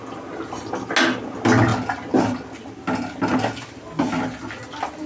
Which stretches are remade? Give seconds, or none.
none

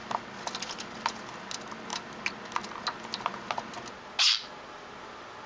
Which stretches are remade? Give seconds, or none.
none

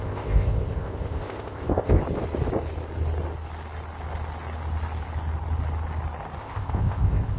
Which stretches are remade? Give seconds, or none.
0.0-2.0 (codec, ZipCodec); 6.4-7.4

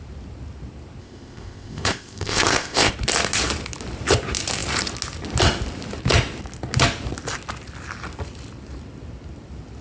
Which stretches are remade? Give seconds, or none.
1.0-2.9 (codec, ZipCodec)